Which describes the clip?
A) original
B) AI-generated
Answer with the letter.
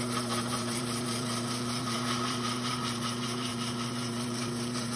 B